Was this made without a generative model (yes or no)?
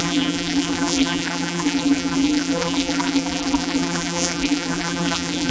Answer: no